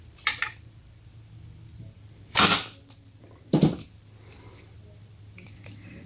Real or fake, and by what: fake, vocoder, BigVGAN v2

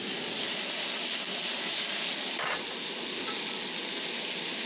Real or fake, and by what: real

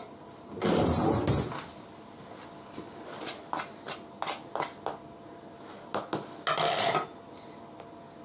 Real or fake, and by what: real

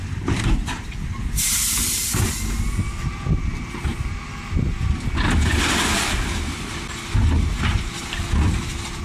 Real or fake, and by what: real